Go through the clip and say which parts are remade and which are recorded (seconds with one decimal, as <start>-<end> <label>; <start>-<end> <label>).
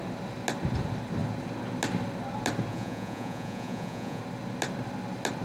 0.0-2.7 recorded; 2.7-4.2 remade; 4.2-5.4 recorded